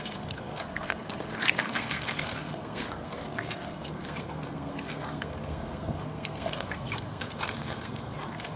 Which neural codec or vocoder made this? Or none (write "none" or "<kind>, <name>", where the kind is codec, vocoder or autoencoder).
codec, SNAC